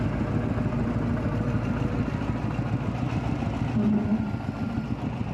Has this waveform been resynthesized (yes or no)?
no